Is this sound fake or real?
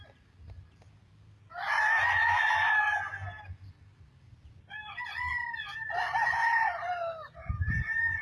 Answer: real